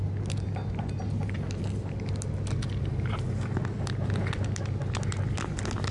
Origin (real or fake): real